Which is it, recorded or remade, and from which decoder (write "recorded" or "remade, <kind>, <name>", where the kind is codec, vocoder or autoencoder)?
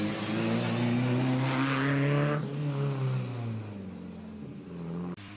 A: recorded